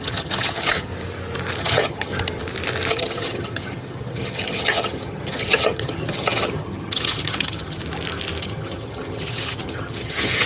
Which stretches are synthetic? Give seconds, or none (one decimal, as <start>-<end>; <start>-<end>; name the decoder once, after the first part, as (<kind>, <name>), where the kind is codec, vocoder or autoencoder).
0.0-0.9 (vocoder, HiFi-GAN); 1.6-2.1; 2.9-7.8; 8.4-10.5